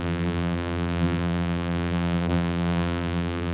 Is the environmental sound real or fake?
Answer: fake